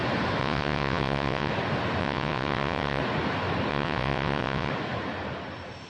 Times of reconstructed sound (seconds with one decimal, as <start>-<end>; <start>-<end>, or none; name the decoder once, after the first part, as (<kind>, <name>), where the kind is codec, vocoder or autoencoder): 0.4-1.5 (vocoder, WaveNeXt); 2.0-3.0; 3.7-4.7